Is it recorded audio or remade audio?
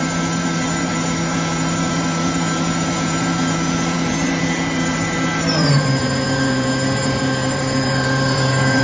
remade